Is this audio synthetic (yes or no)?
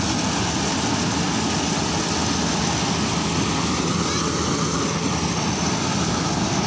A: no